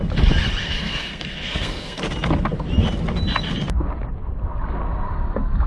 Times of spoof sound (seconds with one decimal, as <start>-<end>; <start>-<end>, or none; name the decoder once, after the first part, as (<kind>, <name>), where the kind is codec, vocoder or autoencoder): 0.6-2.0 (codec, SNAC)